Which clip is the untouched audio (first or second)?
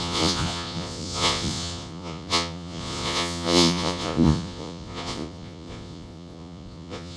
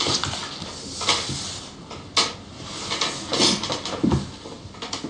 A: second